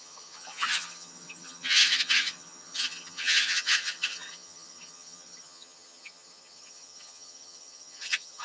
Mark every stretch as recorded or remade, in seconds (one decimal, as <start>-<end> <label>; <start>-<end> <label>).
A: 0.0-8.4 remade